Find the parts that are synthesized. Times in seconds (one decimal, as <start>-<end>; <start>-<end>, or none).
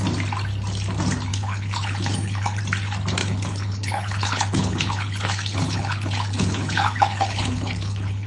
1.3-2.6; 3.2-8.3